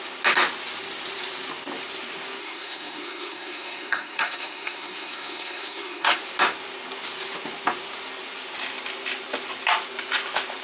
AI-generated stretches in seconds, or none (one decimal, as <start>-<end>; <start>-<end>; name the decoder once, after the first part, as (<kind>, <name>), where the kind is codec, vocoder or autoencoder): 2.4-6.2 (codec, SNAC)